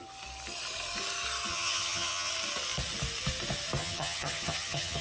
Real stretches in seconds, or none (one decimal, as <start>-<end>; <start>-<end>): 0.0-1.5; 2.3-3.8